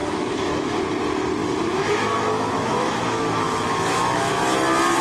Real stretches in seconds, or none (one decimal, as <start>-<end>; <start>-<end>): 0.8-1.4; 4.4-5.0